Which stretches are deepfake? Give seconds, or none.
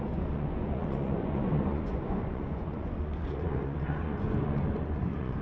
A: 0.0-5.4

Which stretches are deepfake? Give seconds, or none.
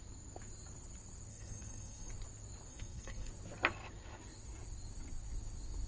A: 1.3-2.1; 2.7-3.3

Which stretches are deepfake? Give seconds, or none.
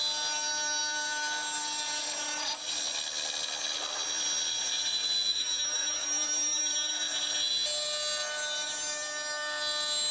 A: 5.3-7.0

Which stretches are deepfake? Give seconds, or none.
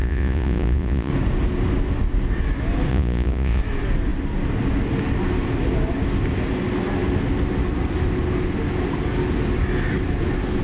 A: 0.0-1.1; 2.9-3.6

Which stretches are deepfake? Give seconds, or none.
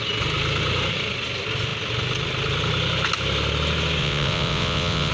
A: 4.0-5.1